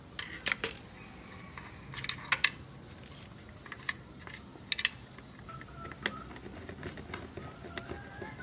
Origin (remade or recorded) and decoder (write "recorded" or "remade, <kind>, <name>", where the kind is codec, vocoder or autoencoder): recorded